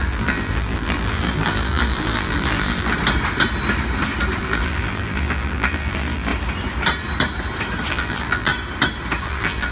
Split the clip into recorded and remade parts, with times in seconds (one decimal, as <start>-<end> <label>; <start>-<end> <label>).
0.0-2.9 remade; 2.9-4.4 recorded; 4.4-6.3 remade; 6.3-7.9 recorded; 7.9-8.5 remade; 8.5-9.2 recorded; 9.2-9.7 remade